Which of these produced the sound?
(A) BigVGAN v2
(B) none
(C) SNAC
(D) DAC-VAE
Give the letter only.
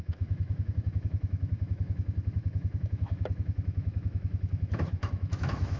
D